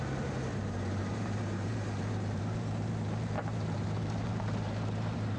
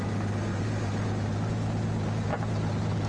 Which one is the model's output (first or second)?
first